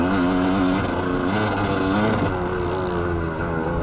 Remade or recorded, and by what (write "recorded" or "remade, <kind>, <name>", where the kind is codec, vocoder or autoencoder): recorded